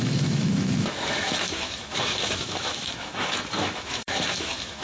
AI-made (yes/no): yes